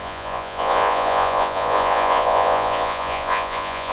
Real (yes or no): no